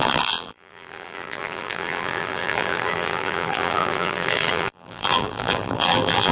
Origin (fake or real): fake